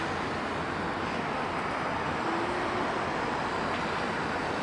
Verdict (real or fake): real